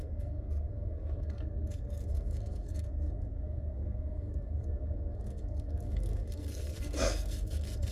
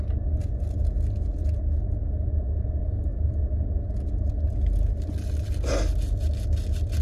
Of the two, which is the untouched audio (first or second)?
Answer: second